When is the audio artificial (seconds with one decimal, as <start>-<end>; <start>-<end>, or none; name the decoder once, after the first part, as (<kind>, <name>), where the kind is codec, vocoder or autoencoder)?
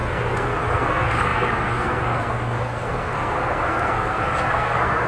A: 0.0-5.1 (codec, SNAC)